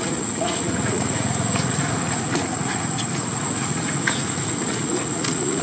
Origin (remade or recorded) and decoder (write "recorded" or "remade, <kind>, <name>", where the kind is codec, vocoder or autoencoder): remade, vocoder, Vocos